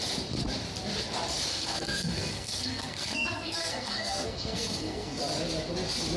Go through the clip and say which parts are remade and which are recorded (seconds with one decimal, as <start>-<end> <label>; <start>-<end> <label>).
0.0-1.5 recorded; 1.5-5.2 remade; 5.2-6.2 recorded